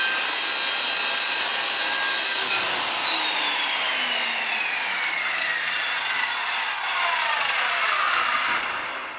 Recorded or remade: recorded